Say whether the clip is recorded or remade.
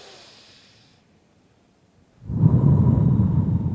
remade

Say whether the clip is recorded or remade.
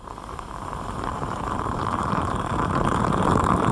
remade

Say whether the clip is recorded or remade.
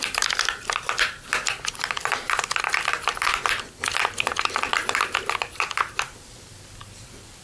remade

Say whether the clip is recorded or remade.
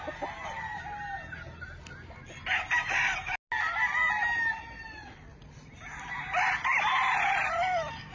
recorded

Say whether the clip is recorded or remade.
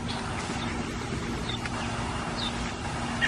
recorded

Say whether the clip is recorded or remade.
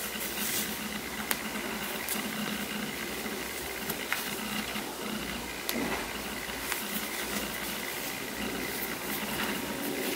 recorded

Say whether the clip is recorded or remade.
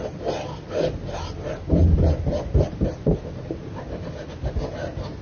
recorded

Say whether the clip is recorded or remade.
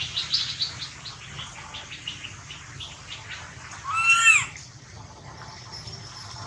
recorded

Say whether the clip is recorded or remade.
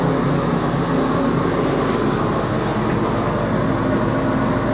recorded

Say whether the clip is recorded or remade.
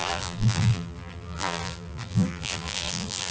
remade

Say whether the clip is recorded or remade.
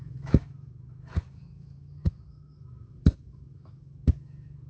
remade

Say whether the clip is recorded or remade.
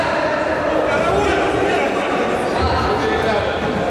recorded